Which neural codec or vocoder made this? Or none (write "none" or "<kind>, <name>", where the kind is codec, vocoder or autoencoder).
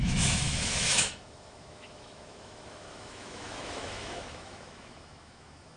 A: autoencoder, DAC-VAE